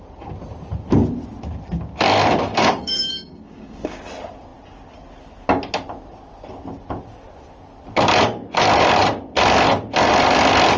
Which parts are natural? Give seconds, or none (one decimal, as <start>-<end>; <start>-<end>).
0.0-2.5; 4.0-10.8